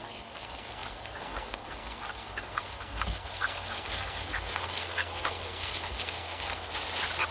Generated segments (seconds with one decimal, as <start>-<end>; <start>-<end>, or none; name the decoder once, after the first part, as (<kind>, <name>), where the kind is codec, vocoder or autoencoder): 0.0-6.7 (codec, SNAC)